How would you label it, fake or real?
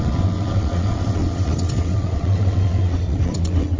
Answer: fake